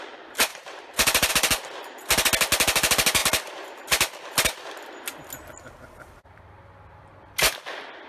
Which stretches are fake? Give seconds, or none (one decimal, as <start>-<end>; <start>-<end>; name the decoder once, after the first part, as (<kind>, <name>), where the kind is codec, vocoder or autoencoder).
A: 0.5-1.3 (vocoder, BigVGAN v2)